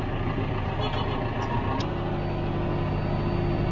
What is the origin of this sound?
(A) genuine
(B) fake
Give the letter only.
A